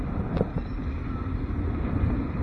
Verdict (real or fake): real